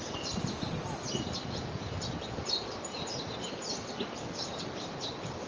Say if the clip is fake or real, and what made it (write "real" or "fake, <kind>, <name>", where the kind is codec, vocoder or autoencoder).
real